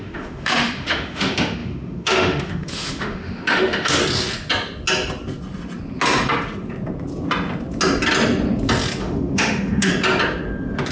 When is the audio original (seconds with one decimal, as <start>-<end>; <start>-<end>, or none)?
4.0-9.0; 9.9-10.9